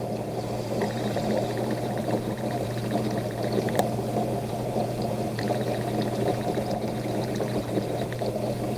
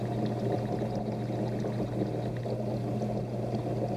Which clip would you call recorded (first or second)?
second